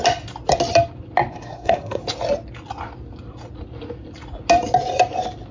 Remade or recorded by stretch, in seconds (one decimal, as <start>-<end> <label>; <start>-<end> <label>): 0.0-1.3 recorded; 1.3-2.0 remade; 2.0-5.5 recorded